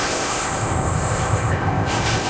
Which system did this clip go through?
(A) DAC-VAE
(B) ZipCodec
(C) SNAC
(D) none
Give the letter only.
B